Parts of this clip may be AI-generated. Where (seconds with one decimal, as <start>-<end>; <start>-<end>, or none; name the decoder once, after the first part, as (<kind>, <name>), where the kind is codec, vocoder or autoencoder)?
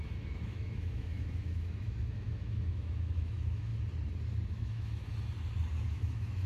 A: 0.0-3.7 (autoencoder, DAC-VAE); 4.5-5.1; 5.9-6.5